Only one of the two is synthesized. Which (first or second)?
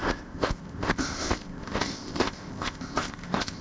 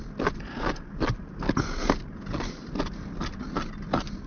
first